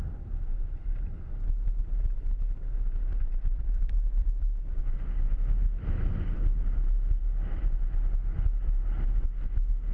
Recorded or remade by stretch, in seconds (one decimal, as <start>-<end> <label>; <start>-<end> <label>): 0.0-3.3 recorded; 3.3-4.8 remade; 4.8-9.9 recorded